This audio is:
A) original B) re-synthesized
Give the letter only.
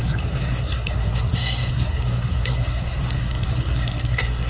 B